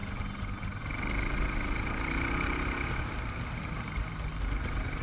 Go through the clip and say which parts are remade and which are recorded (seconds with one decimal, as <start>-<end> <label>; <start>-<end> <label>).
0.0-3.0 recorded; 3.0-5.0 remade